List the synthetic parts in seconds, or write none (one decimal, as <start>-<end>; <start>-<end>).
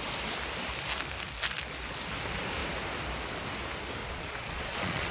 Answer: 4.0-5.1